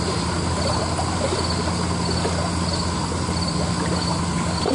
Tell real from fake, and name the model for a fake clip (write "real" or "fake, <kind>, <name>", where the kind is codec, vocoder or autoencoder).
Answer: real